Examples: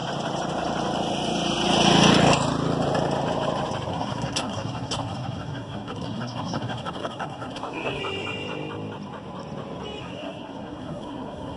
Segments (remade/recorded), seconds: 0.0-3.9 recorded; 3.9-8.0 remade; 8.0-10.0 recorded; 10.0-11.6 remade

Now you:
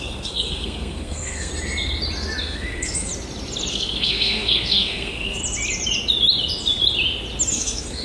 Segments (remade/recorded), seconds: 0.0-1.5 remade; 1.5-2.4 recorded; 2.4-3.1 remade; 3.1-3.7 recorded; 3.7-5.4 remade; 5.4-7.5 recorded; 7.5-8.0 remade

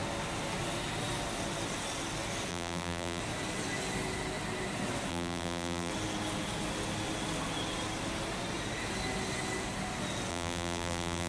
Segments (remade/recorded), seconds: 0.0-2.5 recorded; 2.5-3.2 remade; 3.2-5.1 recorded; 5.1-5.9 remade; 5.9-10.3 recorded; 10.3-11.3 remade